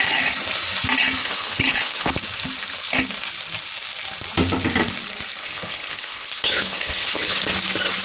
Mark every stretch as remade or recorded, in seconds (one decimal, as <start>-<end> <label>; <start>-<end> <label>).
0.0-1.2 recorded; 1.2-2.1 remade; 2.1-5.4 recorded; 5.4-7.4 remade; 7.4-8.0 recorded